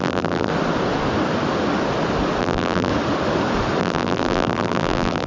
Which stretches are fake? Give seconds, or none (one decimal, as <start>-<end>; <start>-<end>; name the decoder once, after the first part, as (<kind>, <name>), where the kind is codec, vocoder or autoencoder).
0.0-0.5 (vocoder, BigVGAN v2); 2.4-2.9; 3.8-5.3